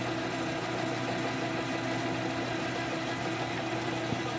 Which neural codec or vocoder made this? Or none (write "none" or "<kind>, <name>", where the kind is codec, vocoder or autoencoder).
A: none